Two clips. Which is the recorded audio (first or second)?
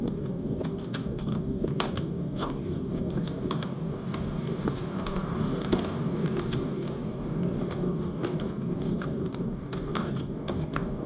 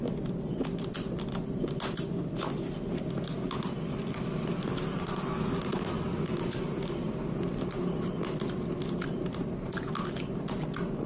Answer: second